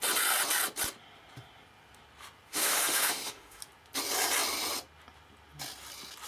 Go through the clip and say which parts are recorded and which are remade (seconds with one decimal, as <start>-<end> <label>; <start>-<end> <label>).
0.0-2.5 recorded; 2.5-3.6 remade; 3.6-6.3 recorded